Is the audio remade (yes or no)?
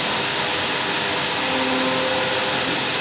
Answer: no